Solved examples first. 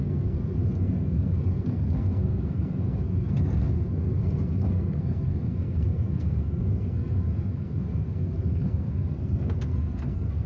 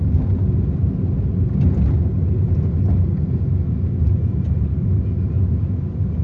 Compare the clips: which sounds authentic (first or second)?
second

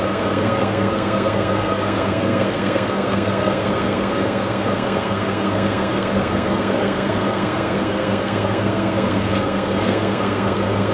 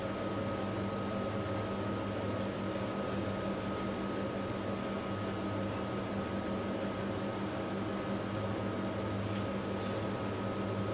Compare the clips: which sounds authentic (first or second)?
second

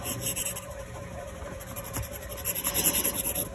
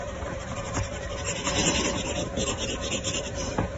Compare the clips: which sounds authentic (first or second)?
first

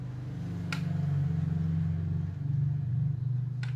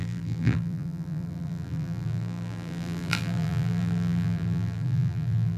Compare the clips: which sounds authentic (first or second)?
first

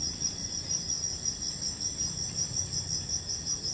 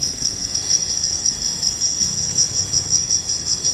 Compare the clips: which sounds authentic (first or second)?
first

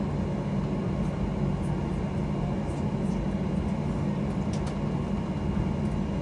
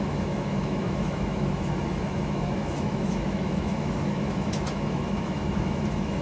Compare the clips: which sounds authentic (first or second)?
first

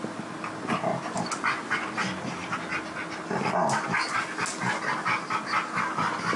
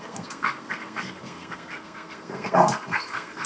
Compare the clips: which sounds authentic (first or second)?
first